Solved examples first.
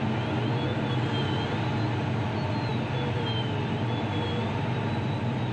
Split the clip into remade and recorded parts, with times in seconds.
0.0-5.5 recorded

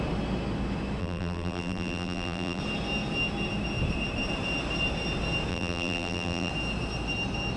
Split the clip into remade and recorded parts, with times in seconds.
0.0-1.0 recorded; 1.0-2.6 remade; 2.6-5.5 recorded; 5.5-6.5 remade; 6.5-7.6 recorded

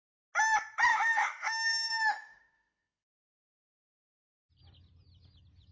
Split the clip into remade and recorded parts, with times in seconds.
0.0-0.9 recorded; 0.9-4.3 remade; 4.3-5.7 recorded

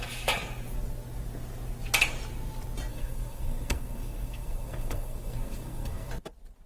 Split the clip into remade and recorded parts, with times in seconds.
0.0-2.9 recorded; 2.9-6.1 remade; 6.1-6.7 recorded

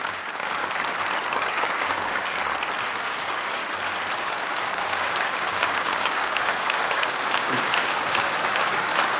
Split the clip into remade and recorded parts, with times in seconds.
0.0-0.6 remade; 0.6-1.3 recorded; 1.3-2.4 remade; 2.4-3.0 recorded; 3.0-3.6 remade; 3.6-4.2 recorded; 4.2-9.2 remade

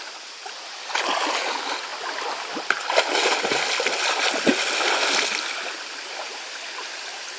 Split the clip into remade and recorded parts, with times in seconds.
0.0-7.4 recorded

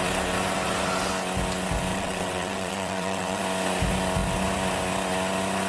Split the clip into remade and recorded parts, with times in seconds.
0.0-1.9 recorded; 1.9-3.4 remade; 3.4-5.7 recorded

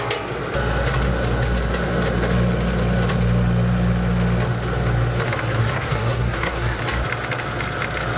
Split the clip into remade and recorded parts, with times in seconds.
0.0-5.6 recorded; 5.6-6.8 remade; 6.8-8.2 recorded